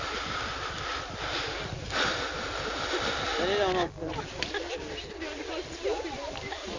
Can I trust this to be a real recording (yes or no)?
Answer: yes